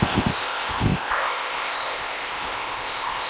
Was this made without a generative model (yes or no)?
no